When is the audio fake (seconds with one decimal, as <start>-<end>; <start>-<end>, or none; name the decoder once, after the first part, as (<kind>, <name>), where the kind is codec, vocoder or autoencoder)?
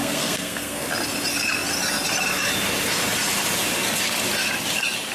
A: 0.0-0.9 (codec, SNAC)